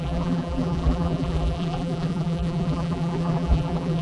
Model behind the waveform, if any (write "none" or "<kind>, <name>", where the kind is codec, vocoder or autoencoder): vocoder, BigVGAN v2